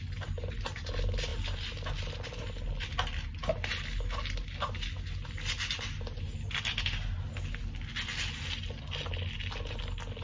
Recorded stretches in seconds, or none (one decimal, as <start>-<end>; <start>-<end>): 0.0-10.2